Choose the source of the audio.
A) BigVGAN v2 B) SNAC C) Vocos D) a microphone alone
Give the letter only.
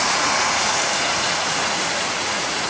C